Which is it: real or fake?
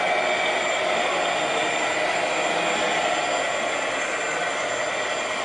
real